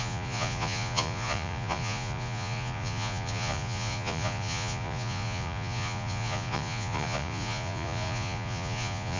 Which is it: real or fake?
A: fake